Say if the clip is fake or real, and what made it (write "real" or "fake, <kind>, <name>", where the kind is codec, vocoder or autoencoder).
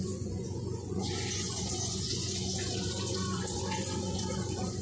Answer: fake, vocoder, Vocos